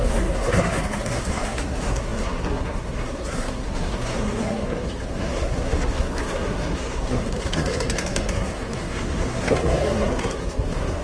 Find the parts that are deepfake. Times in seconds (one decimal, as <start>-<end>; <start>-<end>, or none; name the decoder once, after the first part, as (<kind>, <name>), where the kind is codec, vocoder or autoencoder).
0.0-11.0 (codec, SNAC)